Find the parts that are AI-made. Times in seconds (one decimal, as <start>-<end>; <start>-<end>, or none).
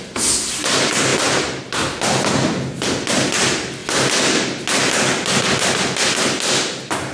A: none